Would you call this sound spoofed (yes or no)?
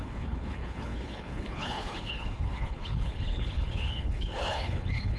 yes